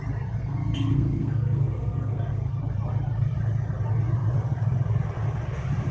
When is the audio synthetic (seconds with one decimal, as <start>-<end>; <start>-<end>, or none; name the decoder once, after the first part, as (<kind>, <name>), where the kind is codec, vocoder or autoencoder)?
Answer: 0.4-2.6 (codec, SNAC)